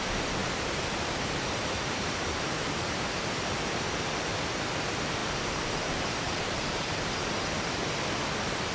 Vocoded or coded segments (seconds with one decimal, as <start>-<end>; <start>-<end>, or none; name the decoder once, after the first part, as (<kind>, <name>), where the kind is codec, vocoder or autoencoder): 0.4-3.0 (vocoder, BigVGAN v2); 5.2-7.1

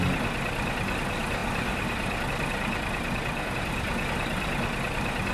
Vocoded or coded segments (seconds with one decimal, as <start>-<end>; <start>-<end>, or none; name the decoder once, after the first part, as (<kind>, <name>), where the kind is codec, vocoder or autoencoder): none

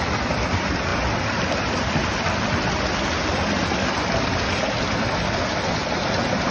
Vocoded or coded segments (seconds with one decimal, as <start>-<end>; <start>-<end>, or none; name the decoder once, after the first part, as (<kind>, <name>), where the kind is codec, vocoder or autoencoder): none

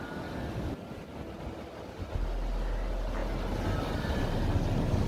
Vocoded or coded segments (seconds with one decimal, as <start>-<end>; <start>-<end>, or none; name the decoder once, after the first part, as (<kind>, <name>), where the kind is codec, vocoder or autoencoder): none

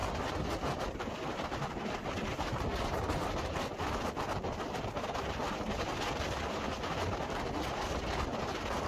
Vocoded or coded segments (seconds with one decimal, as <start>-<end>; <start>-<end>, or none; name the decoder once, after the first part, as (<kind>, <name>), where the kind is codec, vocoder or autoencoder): none

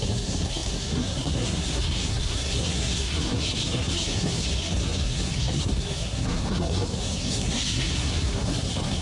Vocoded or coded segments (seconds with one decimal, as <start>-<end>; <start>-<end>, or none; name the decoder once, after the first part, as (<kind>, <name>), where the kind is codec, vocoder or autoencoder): 0.0-9.0 (codec, SNAC)

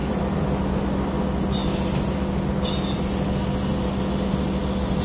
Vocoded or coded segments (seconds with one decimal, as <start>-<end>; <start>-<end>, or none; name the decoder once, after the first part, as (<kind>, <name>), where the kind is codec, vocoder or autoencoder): 0.0-0.7 (vocoder, BigVGAN v2)